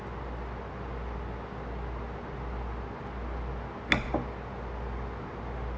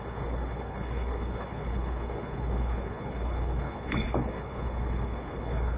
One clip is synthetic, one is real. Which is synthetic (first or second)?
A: second